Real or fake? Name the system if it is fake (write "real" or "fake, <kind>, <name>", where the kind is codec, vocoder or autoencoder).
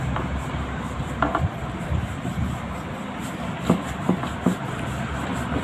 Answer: fake, vocoder, BigVGAN v2